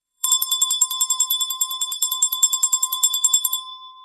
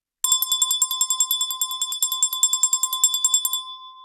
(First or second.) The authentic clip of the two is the second